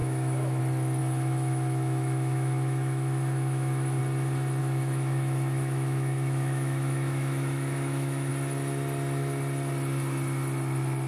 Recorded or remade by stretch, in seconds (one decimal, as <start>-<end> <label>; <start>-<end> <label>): 0.0-0.6 remade; 0.6-1.0 recorded; 1.0-4.0 remade; 4.0-4.6 recorded; 4.6-8.3 remade; 8.3-11.1 recorded